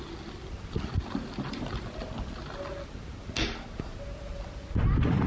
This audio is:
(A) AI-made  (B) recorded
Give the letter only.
B